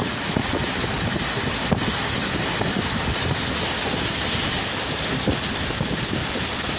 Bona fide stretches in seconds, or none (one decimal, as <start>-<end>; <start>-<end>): 0.6-6.8

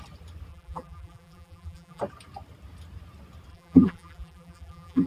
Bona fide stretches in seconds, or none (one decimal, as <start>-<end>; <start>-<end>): 0.0-0.5; 2.0-3.5